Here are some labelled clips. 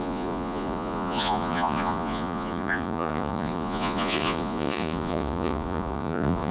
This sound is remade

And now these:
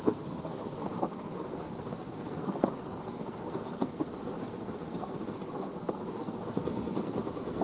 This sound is remade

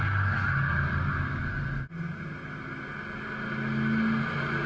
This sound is recorded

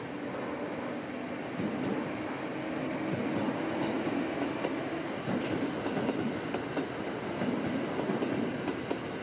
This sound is recorded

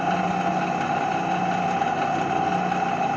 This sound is recorded